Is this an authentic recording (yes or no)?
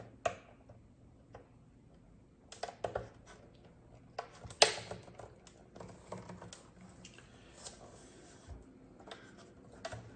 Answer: yes